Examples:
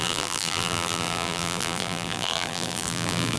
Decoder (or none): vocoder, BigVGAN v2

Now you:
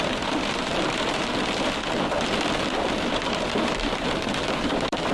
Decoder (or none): vocoder, BigVGAN v2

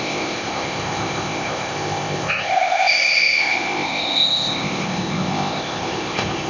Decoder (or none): codec, ZipCodec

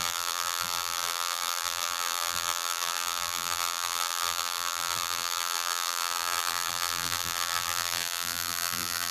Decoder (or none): vocoder, BigVGAN v2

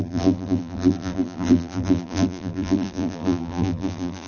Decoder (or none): vocoder, BigVGAN v2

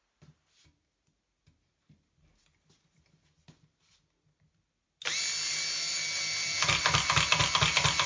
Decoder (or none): none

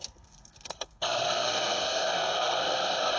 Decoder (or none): codec, SNAC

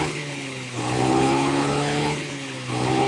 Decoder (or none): codec, HILCodec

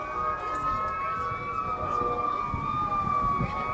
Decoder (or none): none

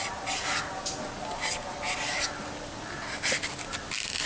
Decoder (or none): none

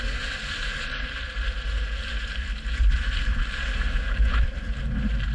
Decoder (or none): vocoder, BigVGAN v2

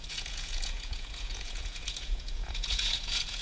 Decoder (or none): vocoder, Vocos